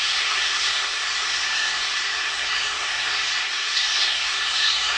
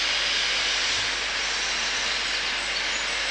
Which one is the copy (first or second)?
first